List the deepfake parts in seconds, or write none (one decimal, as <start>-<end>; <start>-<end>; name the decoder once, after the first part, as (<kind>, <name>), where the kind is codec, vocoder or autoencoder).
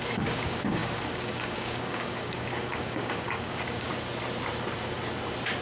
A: 0.0-3.9 (codec, DAC)